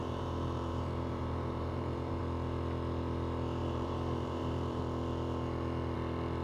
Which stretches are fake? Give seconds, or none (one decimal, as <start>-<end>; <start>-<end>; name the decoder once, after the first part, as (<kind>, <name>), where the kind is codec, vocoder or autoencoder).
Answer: 0.0-2.2 (vocoder, BigVGAN v2); 3.6-4.8